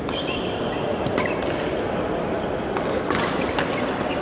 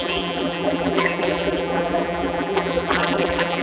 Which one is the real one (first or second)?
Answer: first